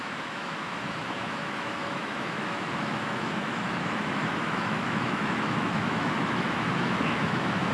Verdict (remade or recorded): remade